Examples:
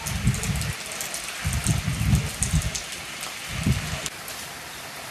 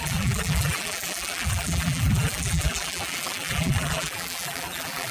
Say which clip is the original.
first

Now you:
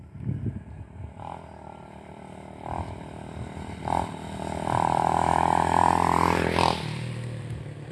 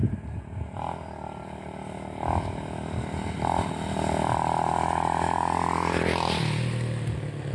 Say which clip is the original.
second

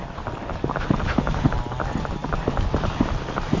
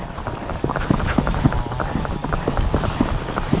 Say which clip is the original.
first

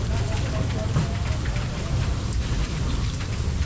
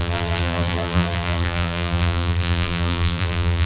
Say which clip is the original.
first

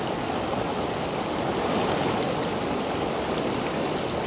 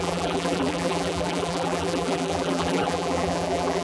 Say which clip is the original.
first